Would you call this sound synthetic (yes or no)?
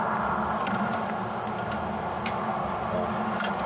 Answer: no